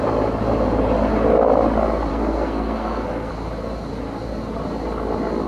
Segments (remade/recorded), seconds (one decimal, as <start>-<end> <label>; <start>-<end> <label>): 0.0-2.1 recorded; 2.1-3.3 remade; 3.3-5.5 recorded